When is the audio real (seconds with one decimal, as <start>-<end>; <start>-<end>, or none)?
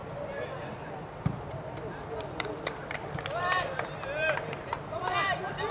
none